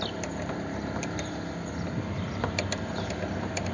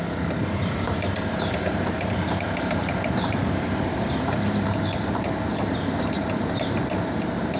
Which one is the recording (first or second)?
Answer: first